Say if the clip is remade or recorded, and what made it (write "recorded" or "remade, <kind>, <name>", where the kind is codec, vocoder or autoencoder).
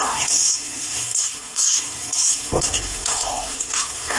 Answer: remade, codec, SNAC